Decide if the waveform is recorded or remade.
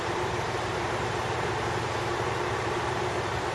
remade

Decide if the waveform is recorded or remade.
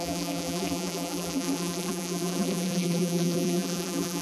remade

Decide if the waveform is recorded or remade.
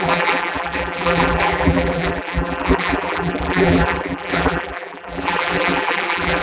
remade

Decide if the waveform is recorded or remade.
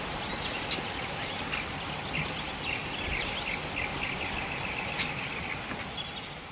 recorded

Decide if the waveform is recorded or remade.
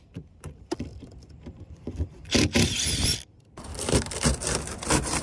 remade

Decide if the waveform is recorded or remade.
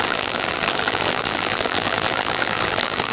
remade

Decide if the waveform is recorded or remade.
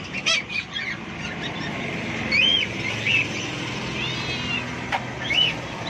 recorded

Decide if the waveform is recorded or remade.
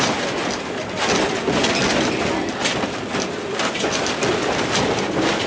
recorded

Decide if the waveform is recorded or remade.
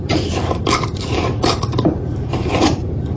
remade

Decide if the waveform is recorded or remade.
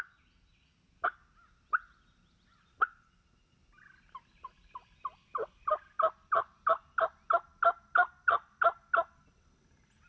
recorded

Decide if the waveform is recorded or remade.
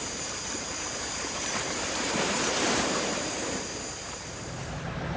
remade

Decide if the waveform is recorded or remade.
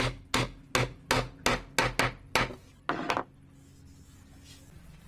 recorded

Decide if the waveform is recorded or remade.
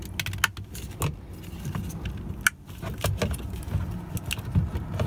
recorded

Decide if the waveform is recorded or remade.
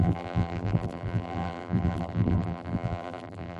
remade